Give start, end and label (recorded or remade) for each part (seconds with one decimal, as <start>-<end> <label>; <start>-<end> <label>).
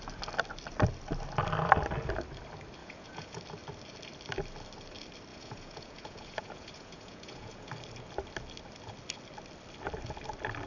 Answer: 0.0-2.8 recorded; 2.8-3.4 remade; 3.4-5.3 recorded; 5.3-7.7 remade; 7.7-10.7 recorded